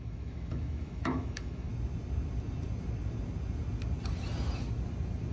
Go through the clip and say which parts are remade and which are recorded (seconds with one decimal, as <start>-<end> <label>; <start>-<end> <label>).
0.0-1.7 remade; 1.7-5.3 recorded